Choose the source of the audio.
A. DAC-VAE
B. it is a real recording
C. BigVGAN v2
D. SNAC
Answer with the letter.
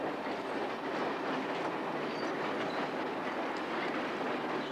B